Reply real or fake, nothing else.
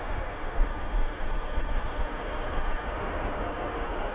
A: fake